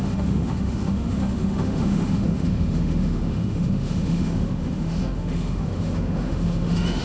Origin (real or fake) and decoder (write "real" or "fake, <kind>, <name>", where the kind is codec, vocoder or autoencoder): fake, autoencoder, DAC-VAE